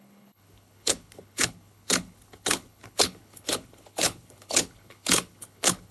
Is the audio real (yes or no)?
no